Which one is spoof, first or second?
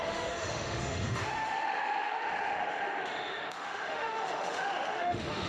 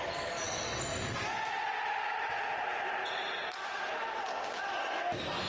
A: first